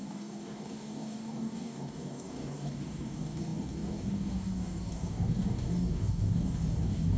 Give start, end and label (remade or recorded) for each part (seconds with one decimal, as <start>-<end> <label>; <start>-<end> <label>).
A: 0.0-7.2 remade